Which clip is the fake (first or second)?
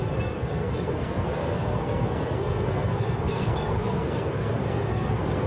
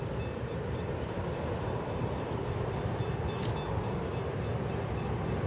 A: first